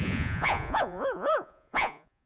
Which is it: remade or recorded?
remade